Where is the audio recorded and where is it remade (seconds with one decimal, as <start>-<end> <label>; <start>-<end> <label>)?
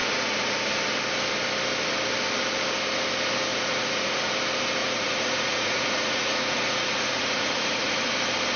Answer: 0.0-0.7 remade; 0.7-3.5 recorded; 3.5-4.3 remade; 4.3-4.8 recorded; 4.8-8.1 remade; 8.1-8.6 recorded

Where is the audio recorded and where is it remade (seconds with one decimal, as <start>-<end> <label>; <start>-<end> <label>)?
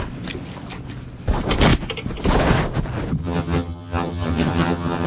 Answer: 0.0-3.2 recorded; 3.2-5.1 remade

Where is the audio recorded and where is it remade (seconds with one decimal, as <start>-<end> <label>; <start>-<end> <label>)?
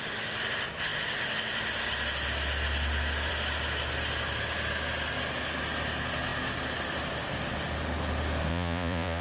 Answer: 0.0-8.5 recorded; 8.5-9.2 remade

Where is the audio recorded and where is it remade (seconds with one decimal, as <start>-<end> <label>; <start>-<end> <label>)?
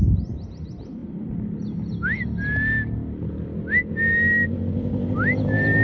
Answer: 0.0-5.8 recorded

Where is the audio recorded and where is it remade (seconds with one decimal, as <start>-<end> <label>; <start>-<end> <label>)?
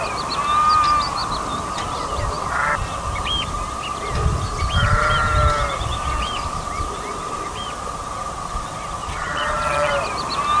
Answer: 0.0-9.0 recorded; 9.0-9.9 remade; 9.9-10.6 recorded